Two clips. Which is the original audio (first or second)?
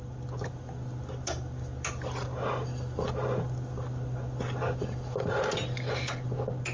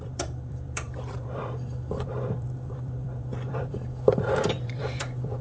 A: first